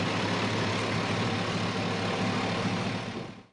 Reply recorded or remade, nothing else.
recorded